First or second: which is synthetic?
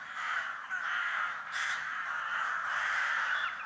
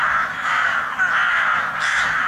first